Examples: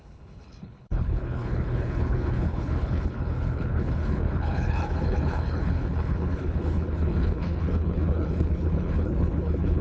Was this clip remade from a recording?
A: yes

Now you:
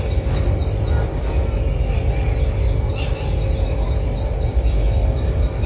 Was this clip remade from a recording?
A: no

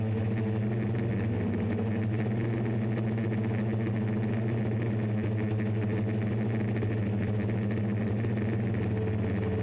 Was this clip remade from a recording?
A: no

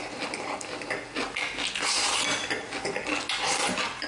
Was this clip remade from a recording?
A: no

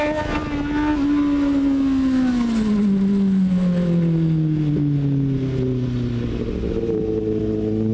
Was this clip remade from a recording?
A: no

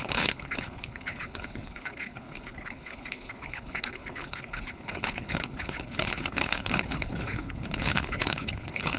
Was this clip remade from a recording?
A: yes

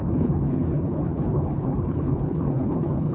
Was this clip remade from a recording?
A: yes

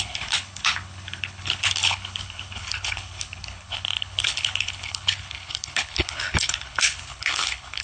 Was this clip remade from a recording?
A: yes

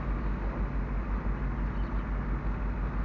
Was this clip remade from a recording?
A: no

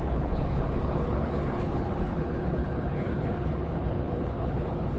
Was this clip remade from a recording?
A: yes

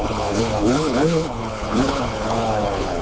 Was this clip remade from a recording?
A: yes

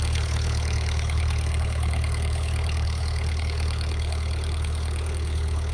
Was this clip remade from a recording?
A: yes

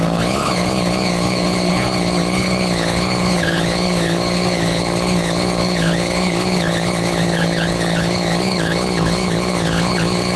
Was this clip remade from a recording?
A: yes